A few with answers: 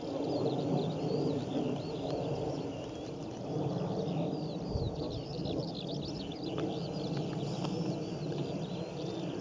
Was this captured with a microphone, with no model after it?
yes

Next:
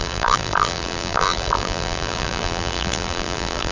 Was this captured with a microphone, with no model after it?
no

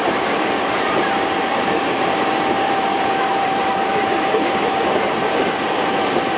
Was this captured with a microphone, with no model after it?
no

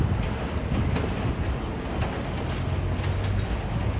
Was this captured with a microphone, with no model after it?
yes